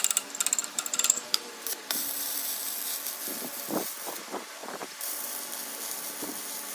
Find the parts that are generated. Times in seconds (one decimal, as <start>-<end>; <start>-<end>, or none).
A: 0.6-2.8; 4.6-5.3